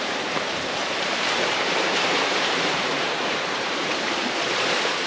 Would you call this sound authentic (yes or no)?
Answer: no